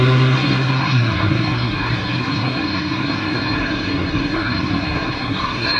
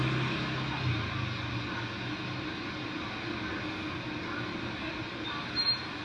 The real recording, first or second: second